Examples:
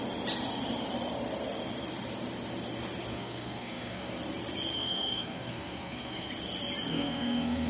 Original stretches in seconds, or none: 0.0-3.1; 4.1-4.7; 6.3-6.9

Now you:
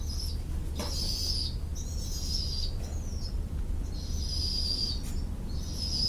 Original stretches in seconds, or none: 0.0-6.1